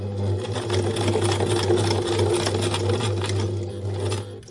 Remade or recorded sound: recorded